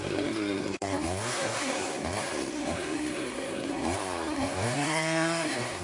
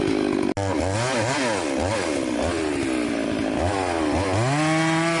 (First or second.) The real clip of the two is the second